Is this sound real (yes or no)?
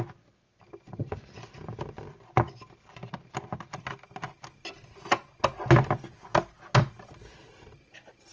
yes